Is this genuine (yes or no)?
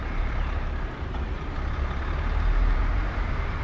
no